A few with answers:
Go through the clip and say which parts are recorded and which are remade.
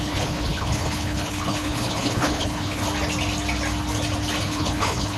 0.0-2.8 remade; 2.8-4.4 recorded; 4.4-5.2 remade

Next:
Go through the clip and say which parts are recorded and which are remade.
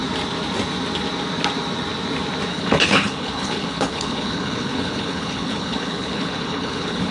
0.0-2.5 recorded; 2.5-7.1 remade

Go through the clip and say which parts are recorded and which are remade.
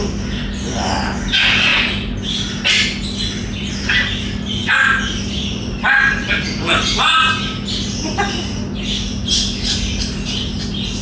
0.0-11.0 recorded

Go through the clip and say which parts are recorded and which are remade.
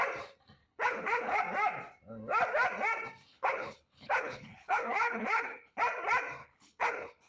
0.0-0.6 recorded; 0.6-1.4 remade; 1.4-3.3 recorded; 3.3-5.8 remade; 5.8-6.4 recorded; 6.4-7.3 remade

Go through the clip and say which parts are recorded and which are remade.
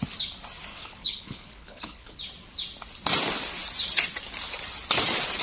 0.0-0.7 recorded; 0.7-2.2 remade; 2.2-5.4 recorded